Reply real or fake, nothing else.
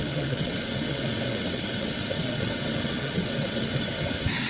fake